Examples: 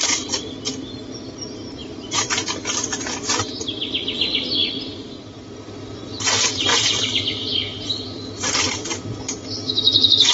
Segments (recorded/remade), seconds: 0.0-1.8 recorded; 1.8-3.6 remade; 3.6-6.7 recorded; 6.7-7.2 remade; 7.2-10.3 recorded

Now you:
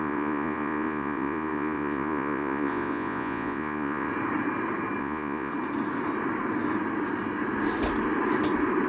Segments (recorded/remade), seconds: 0.0-4.1 remade; 4.1-5.0 recorded; 5.0-5.5 remade; 5.5-8.9 recorded

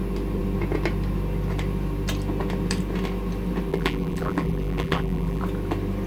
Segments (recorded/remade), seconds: 0.0-3.7 recorded; 3.7-5.4 remade; 5.4-6.1 recorded

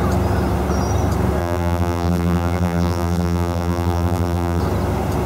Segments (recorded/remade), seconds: 0.0-1.4 recorded; 1.4-4.6 remade; 4.6-5.3 recorded

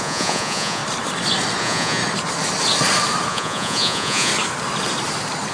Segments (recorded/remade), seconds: 0.0-0.8 remade; 0.8-1.6 recorded; 1.6-2.0 remade; 2.0-3.3 recorded; 3.3-4.3 remade; 4.3-5.5 recorded

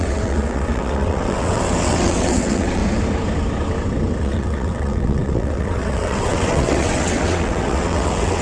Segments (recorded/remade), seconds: 0.0-2.8 remade; 2.8-4.2 recorded; 4.2-8.4 remade

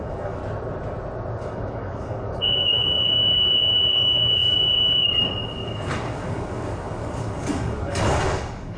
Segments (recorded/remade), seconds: 0.0-0.4 remade; 0.4-1.4 recorded; 1.4-8.8 remade

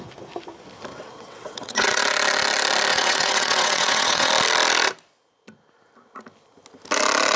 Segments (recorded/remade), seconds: 0.0-0.9 recorded; 0.9-2.0 remade; 2.0-2.9 recorded; 2.9-4.3 remade; 4.3-7.4 recorded